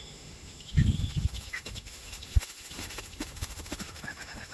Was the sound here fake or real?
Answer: fake